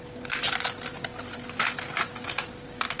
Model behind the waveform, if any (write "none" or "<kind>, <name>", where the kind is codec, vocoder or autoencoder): none